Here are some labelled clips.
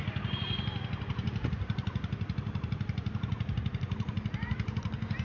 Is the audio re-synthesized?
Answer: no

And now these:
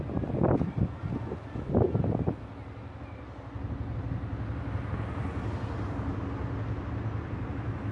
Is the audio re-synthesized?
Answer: no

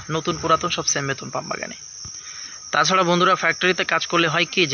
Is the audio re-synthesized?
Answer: no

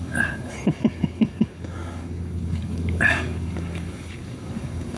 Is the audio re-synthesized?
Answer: yes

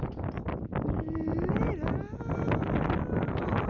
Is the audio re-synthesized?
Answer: no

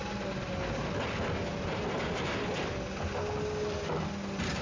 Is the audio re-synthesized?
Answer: no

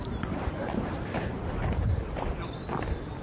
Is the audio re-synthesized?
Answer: no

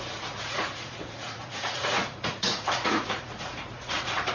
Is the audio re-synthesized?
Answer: yes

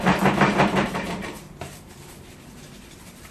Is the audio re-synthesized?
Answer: yes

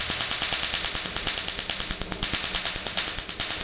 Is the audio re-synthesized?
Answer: no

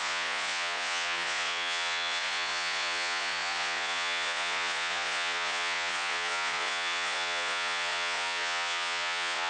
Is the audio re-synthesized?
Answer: yes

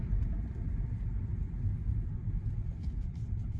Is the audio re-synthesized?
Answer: no